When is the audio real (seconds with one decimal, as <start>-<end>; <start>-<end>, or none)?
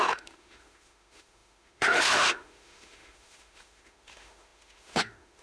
none